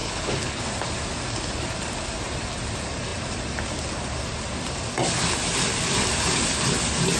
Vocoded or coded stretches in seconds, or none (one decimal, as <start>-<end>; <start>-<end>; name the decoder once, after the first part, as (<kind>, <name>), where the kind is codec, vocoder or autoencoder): 0.0-0.6 (codec, HILCodec)